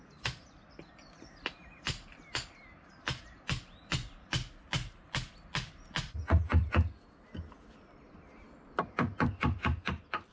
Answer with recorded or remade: recorded